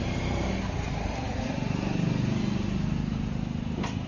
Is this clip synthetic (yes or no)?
no